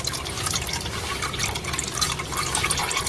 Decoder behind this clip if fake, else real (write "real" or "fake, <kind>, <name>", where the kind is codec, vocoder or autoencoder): real